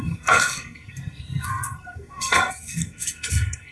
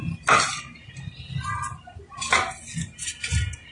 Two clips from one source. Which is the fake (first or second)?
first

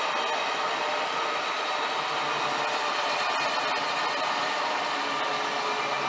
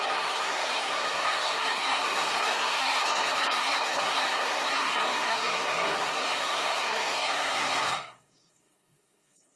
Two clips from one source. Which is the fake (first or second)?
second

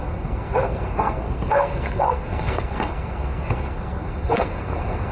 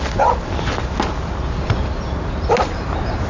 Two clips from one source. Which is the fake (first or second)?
first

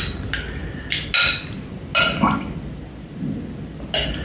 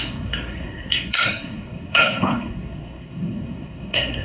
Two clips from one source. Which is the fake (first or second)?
second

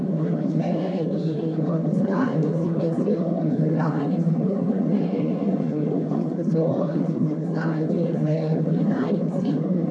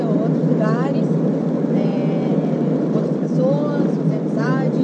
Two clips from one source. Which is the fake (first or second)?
first